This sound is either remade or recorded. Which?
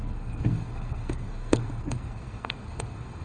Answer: remade